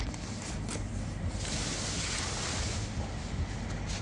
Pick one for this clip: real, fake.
real